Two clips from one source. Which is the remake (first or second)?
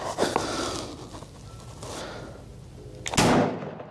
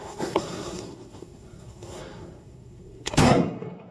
second